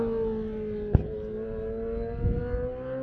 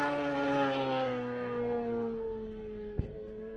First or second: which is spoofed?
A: second